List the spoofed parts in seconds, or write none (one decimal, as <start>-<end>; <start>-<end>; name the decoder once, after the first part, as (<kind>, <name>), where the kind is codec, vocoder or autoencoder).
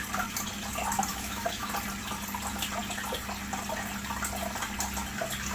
1.1-1.7 (autoencoder, DAC-VAE)